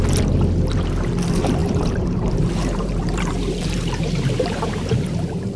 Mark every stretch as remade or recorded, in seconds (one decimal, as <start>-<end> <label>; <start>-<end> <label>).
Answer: 0.0-1.6 recorded; 1.6-5.0 remade; 5.0-5.6 recorded